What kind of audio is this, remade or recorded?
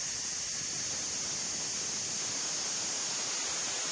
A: recorded